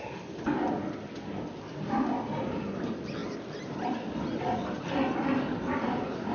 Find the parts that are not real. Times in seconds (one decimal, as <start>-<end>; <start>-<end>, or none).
none